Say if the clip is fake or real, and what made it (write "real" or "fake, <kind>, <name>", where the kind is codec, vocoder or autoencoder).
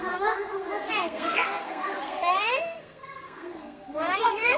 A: fake, codec, SNAC